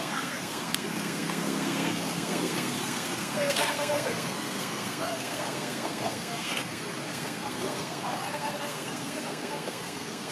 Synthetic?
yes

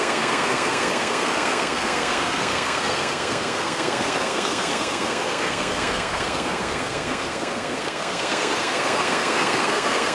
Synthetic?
yes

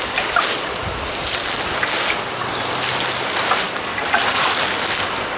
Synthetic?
no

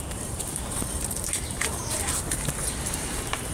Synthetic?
yes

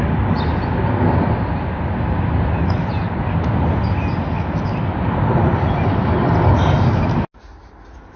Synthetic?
no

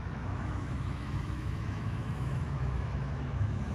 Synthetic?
yes